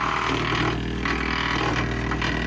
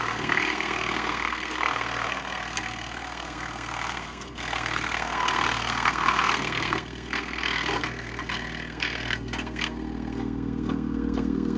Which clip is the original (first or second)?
first